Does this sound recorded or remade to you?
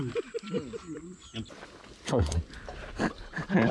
recorded